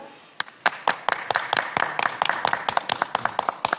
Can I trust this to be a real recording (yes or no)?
yes